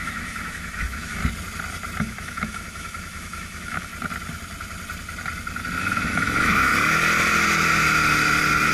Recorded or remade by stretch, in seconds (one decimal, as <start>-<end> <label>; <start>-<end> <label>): 0.0-1.2 remade; 1.2-2.0 recorded; 2.0-3.9 remade; 3.9-5.8 recorded; 5.8-6.7 remade; 6.7-8.7 recorded